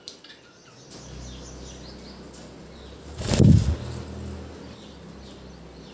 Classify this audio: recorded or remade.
recorded